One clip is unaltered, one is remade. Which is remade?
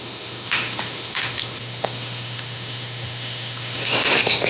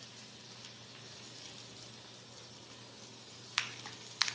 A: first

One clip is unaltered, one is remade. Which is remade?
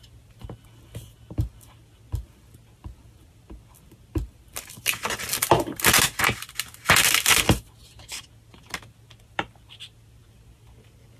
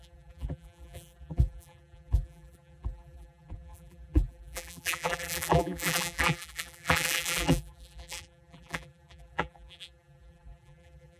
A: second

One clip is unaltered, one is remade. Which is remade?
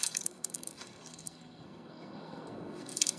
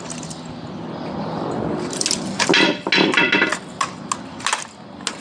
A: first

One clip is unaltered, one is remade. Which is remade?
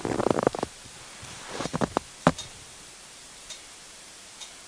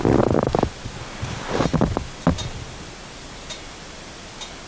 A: first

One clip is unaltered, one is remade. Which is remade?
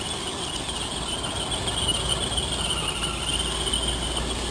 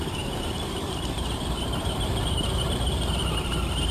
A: second